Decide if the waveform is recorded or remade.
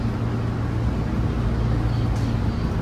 recorded